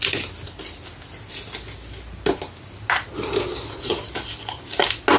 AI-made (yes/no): no